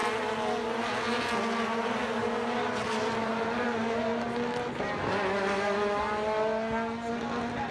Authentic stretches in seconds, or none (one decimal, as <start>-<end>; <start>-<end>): 0.0-7.7